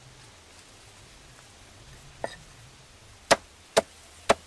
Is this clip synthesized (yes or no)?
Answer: no